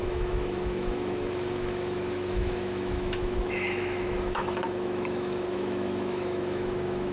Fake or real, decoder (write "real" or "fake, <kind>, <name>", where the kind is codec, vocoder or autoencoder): fake, autoencoder, DAC-VAE